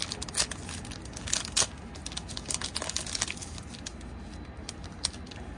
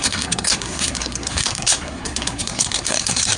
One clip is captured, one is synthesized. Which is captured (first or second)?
first